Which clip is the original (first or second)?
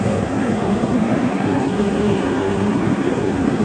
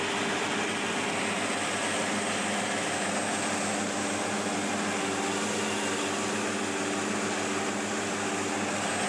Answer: second